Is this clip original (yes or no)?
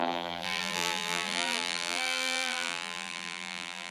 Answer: no